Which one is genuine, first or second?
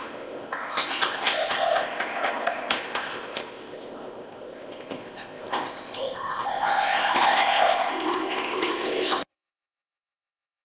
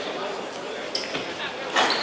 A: second